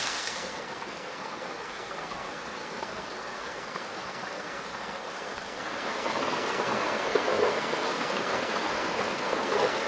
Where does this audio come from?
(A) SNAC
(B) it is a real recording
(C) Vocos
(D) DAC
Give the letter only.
A